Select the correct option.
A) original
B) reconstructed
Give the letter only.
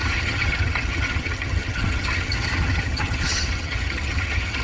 B